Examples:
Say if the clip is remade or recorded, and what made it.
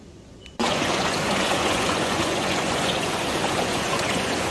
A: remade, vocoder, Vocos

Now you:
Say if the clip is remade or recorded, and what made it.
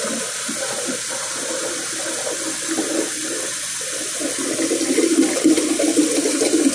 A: recorded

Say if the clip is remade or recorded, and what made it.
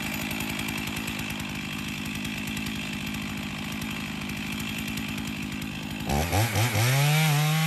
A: recorded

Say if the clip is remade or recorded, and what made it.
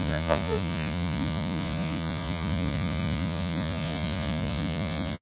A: remade, vocoder, Vocos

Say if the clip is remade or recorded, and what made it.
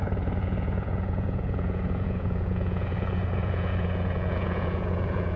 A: remade, vocoder, Vocos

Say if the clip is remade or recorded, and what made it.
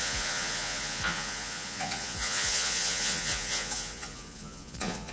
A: remade, vocoder, Vocos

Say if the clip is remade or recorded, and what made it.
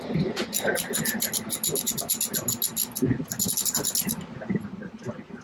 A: recorded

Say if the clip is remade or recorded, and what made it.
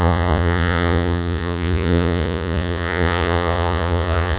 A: remade, vocoder, Vocos